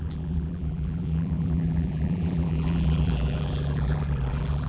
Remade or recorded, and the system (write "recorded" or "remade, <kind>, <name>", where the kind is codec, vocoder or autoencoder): remade, vocoder, BigVGAN v2